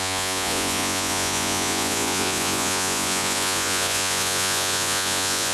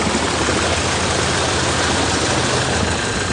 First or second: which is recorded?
second